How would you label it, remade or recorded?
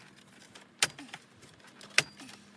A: recorded